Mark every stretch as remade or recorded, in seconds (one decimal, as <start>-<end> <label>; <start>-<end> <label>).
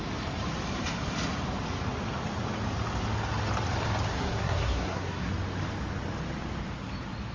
0.0-4.1 recorded; 4.1-5.3 remade; 5.3-7.3 recorded